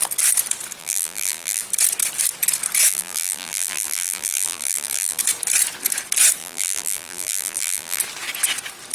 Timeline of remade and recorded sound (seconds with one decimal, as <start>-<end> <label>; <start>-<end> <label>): 0.0-0.8 recorded; 0.8-1.6 remade; 1.6-2.9 recorded; 2.9-5.2 remade; 5.2-6.4 recorded; 6.4-8.0 remade; 8.0-8.9 recorded